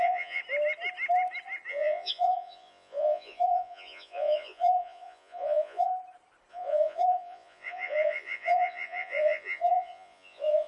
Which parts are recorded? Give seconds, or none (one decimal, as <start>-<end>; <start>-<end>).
0.4-1.7; 5.9-6.5